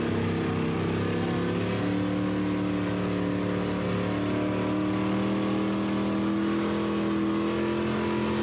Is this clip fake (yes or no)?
no